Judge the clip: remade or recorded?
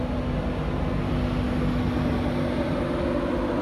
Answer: recorded